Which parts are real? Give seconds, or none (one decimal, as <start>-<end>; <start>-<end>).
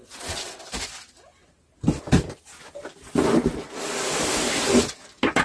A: 0.6-5.4